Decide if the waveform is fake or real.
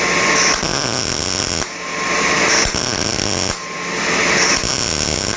real